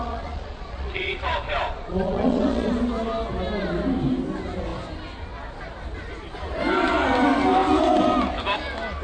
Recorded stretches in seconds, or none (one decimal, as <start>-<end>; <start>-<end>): 2.7-9.0